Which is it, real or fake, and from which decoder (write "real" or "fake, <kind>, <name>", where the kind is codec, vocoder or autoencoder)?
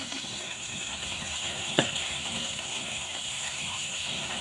fake, codec, SNAC